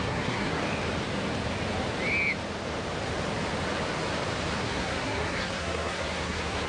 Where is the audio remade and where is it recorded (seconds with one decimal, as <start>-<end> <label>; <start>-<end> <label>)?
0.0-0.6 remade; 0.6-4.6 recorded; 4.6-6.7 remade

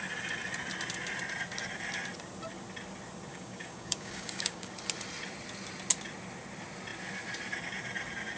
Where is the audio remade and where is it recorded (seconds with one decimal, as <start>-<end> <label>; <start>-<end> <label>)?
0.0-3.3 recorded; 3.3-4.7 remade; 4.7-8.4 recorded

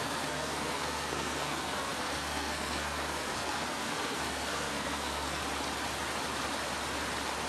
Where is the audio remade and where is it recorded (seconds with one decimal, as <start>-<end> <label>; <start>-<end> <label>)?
0.0-5.4 remade; 5.4-7.5 recorded

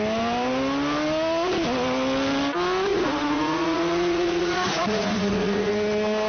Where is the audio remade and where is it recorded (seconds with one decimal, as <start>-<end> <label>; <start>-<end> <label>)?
0.0-2.9 recorded; 2.9-5.7 remade; 5.7-6.3 recorded

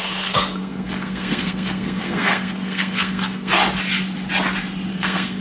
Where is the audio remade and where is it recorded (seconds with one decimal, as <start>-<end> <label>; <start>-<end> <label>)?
0.0-3.5 remade; 3.5-4.9 recorded; 4.9-5.4 remade

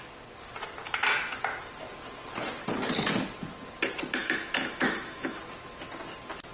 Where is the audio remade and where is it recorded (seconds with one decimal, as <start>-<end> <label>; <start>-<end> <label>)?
0.0-4.2 recorded; 4.2-5.4 remade; 5.4-6.5 recorded